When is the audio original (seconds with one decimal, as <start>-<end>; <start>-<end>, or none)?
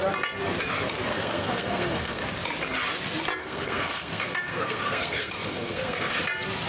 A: 0.0-1.1; 2.2-3.4; 6.2-6.7